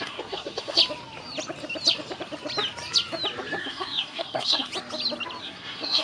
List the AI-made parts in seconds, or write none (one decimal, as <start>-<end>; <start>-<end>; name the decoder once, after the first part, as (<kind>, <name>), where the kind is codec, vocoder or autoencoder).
0.0-0.8 (codec, SNAC); 3.6-4.7; 5.4-6.0